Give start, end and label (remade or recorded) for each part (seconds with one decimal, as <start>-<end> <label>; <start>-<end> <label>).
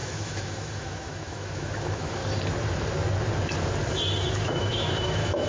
0.0-2.2 remade; 2.2-4.3 recorded; 4.3-5.5 remade